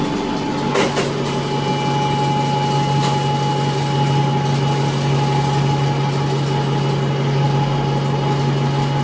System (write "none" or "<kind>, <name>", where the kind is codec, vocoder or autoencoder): none